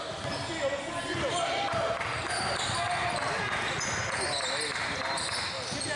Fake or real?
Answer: real